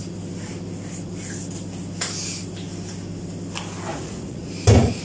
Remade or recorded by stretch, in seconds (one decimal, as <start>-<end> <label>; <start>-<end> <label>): 0.0-3.9 recorded; 3.9-4.5 remade; 4.5-5.0 recorded